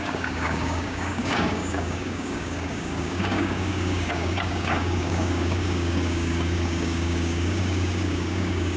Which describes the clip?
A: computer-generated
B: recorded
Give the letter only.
A